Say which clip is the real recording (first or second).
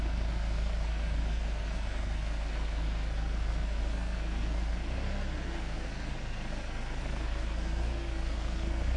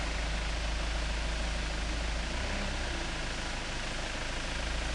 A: second